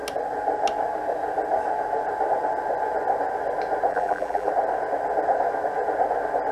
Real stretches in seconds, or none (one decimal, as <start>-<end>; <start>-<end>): 0.0-3.9; 4.5-6.5